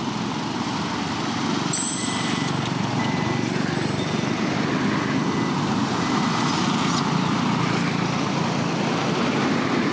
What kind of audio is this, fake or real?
fake